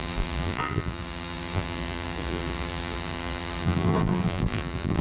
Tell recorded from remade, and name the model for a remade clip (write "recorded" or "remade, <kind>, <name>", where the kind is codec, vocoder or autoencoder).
remade, vocoder, BigVGAN v2